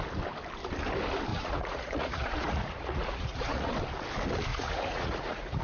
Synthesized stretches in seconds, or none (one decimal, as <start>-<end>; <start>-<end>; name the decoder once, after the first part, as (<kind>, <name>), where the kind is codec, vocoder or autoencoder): 1.3-3.7 (vocoder, Vocos); 4.5-5.6